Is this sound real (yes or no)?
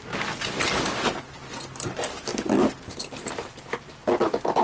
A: no